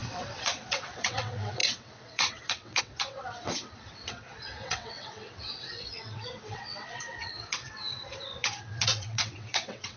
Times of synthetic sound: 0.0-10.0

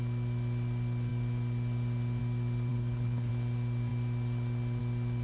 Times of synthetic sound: 2.7-3.3

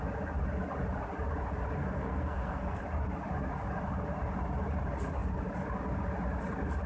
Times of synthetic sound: 1.8-2.8

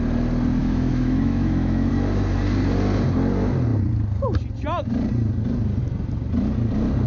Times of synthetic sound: 0.6-1.9